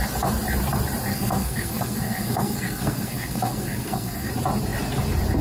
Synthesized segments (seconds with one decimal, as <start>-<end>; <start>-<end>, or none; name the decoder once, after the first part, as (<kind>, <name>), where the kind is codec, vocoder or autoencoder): 1.1-4.3 (codec, SNAC)